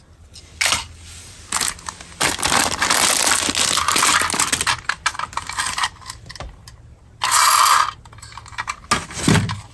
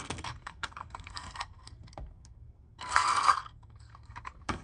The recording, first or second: first